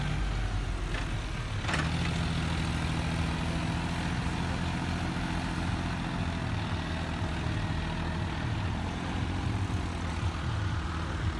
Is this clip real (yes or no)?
yes